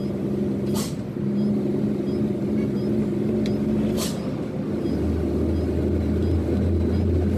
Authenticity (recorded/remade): recorded